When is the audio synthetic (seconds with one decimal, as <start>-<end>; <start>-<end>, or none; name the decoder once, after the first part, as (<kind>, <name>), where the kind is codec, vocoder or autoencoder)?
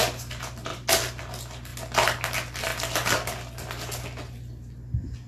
none